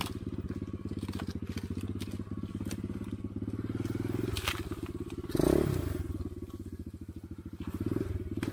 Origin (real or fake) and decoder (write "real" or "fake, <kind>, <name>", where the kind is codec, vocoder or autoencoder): real